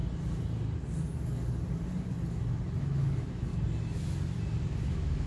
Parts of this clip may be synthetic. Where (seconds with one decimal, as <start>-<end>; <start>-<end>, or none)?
2.8-3.5; 4.8-5.3